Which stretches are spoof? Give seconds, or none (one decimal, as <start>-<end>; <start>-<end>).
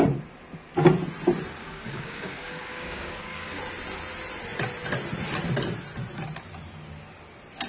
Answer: 1.6-3.6